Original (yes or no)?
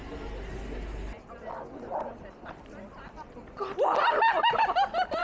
yes